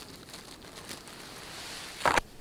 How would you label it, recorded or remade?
recorded